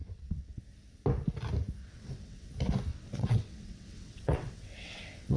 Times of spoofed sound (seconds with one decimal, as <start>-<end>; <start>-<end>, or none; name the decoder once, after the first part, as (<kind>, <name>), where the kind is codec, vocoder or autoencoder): 0.0-0.6 (vocoder, WaveNeXt); 1.8-2.5; 2.9-5.4